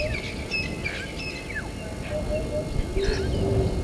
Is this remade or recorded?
recorded